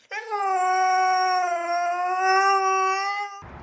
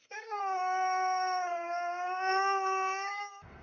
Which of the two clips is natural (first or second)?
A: first